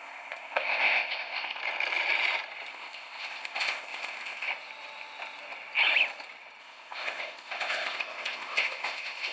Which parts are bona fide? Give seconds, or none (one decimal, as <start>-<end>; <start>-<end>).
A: 1.6-2.7; 4.5-6.6

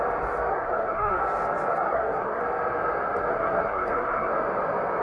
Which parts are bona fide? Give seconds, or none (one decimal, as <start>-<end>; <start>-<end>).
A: 0.0-0.5; 1.2-1.7; 2.4-3.3; 4.3-5.0